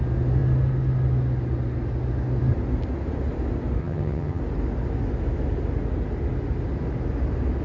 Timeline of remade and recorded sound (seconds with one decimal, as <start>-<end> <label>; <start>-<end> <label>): 0.0-3.8 recorded; 3.8-4.4 remade; 4.4-7.6 recorded